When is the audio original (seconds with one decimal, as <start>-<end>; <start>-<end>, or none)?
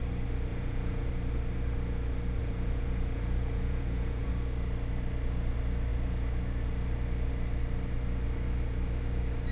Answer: 0.0-0.5; 1.1-2.4; 4.3-9.5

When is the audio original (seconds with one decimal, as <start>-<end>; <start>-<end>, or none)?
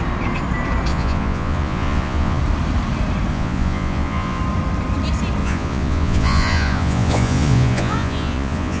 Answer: 0.0-0.9; 2.4-3.3; 4.4-5.4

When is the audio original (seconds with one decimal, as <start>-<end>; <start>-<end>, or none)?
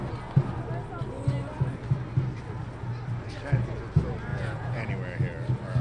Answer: 0.0-4.3; 4.9-5.8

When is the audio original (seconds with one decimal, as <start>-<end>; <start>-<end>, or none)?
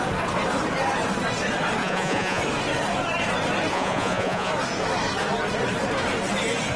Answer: 0.0-1.8; 2.4-3.7; 4.5-6.8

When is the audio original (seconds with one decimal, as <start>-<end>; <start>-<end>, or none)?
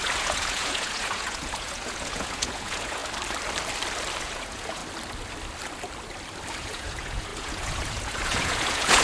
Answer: 3.0-4.2; 4.8-6.6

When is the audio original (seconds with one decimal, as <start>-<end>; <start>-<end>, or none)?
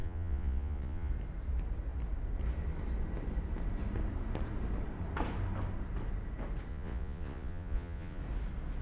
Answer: 1.1-6.7; 8.2-8.8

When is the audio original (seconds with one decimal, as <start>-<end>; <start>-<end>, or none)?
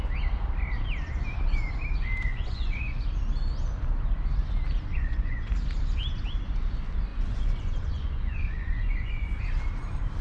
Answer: 0.0-2.3; 3.0-4.9; 5.5-7.1; 9.4-10.2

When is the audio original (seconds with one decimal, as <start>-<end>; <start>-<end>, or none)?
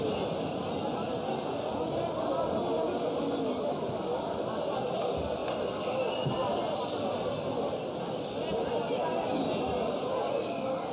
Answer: 0.0-10.9